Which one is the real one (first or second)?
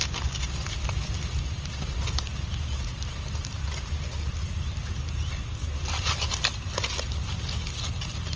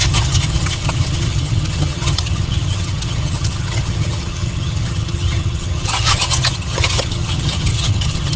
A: first